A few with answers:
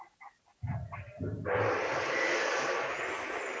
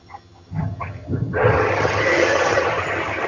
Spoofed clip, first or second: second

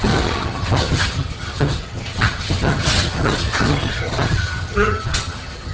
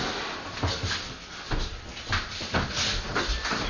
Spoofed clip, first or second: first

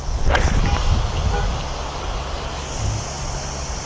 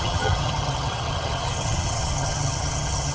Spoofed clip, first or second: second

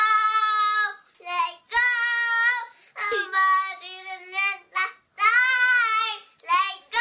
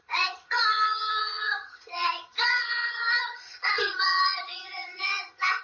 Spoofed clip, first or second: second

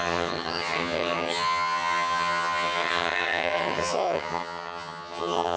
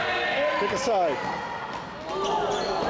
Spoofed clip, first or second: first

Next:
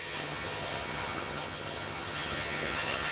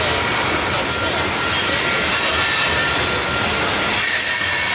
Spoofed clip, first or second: first